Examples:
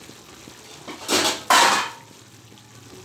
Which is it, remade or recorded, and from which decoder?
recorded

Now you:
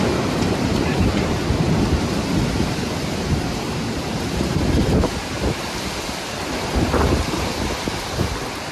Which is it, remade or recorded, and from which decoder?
remade, vocoder, BigVGAN v2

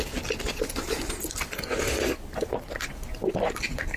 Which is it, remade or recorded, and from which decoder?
recorded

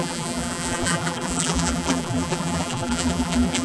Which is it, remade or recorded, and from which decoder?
remade, vocoder, BigVGAN v2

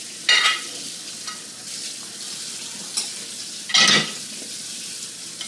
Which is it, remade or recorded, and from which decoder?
recorded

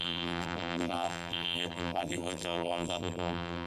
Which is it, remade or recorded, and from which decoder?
remade, vocoder, BigVGAN v2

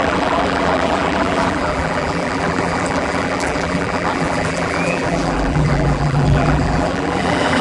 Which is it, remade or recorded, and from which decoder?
remade, vocoder, BigVGAN v2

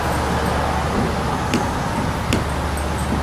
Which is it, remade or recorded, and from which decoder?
recorded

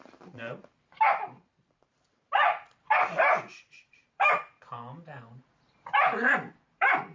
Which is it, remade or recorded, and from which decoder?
remade, vocoder, BigVGAN v2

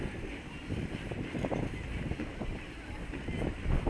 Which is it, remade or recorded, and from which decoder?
recorded